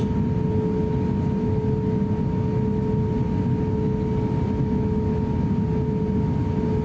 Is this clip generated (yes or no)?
no